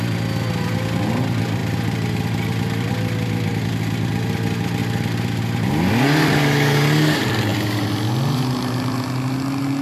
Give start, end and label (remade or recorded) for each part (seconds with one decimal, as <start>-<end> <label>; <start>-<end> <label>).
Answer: 0.0-9.8 recorded